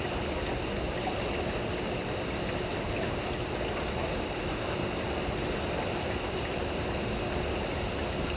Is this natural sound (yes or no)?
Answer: yes